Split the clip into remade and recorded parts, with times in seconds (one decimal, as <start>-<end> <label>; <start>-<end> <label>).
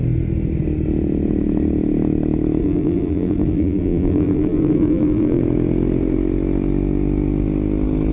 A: 0.0-2.6 recorded; 2.6-5.4 remade; 5.4-8.1 recorded